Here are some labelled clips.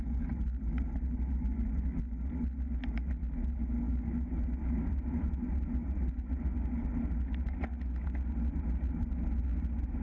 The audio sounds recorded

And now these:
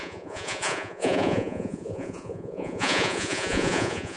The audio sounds remade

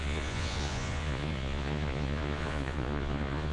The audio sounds remade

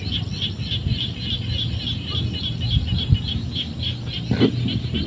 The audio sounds recorded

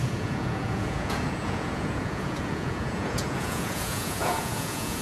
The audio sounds remade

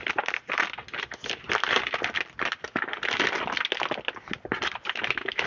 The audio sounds recorded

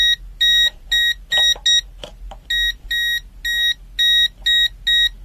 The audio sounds recorded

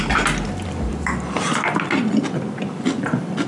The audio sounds recorded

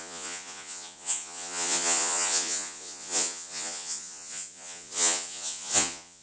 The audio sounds remade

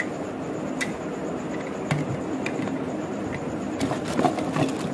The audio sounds recorded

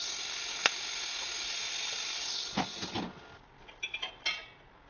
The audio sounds recorded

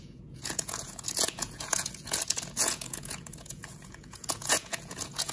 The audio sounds remade